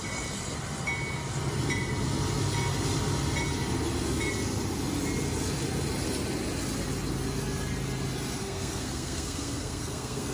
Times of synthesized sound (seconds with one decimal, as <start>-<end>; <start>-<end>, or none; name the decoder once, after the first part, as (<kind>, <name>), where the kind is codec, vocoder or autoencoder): 8.4-10.3 (codec, SNAC)